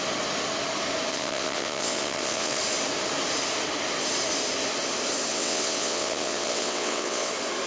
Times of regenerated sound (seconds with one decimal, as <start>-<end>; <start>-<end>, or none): 1.1-2.6; 5.3-7.3